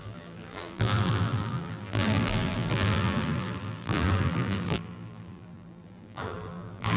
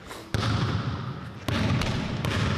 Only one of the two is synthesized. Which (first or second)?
first